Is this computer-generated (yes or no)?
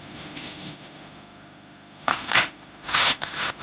yes